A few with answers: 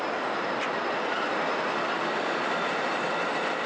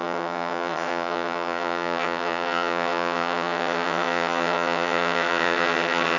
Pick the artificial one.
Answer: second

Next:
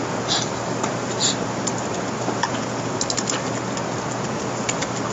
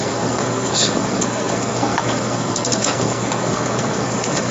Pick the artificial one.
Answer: second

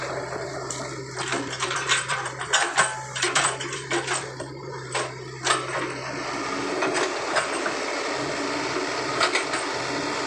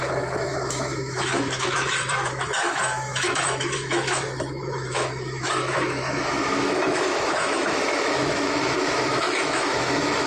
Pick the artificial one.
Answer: second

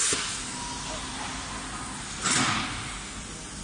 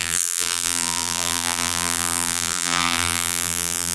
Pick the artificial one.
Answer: second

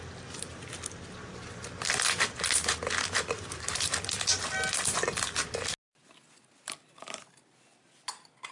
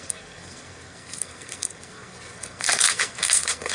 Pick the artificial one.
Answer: second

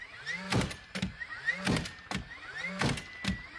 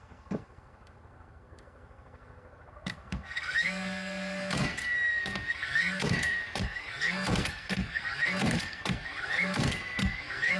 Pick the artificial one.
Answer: second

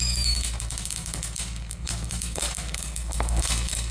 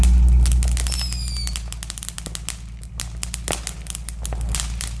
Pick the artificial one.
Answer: first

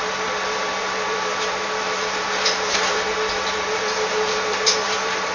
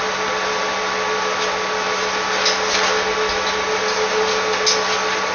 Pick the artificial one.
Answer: first